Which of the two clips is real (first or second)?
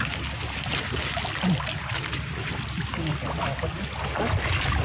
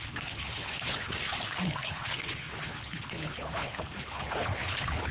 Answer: first